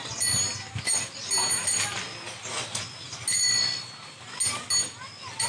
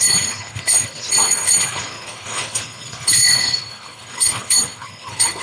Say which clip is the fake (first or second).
second